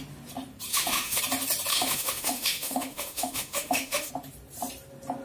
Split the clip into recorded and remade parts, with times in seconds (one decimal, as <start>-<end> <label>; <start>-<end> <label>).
0.0-0.7 recorded; 0.7-1.2 remade; 1.2-1.7 recorded; 1.7-4.1 remade; 4.1-5.2 recorded